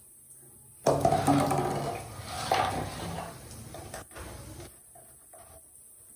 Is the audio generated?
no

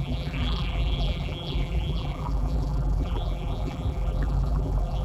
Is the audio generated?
yes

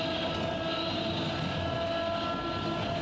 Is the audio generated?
no